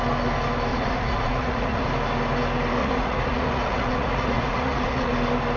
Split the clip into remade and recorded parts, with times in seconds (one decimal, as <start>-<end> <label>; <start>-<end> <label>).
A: 0.0-0.7 recorded; 0.7-1.9 remade; 1.9-2.8 recorded; 2.8-5.1 remade; 5.1-5.6 recorded